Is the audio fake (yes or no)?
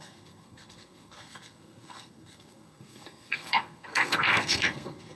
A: yes